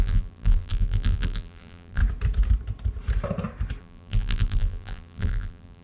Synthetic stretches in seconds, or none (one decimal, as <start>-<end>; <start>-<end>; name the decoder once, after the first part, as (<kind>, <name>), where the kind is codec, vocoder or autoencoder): 0.0-2.0 (vocoder, BigVGAN v2); 3.8-5.8